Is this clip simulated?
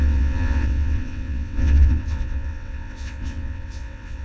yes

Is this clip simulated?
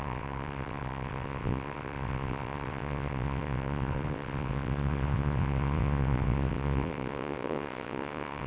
yes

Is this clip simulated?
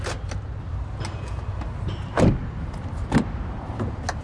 no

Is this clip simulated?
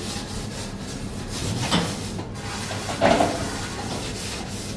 no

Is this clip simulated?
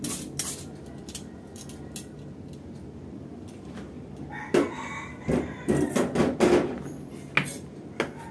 no